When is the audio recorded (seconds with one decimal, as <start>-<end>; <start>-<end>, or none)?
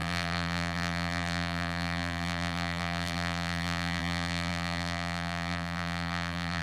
none